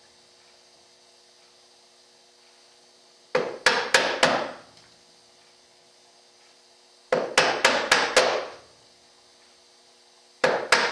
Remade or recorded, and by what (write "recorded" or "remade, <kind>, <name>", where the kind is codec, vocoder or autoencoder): recorded